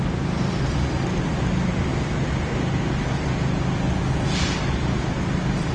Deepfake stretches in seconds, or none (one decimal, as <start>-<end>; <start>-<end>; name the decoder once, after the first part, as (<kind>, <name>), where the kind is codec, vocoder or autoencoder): none